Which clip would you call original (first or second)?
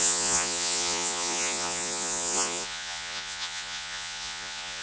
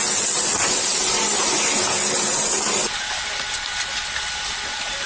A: second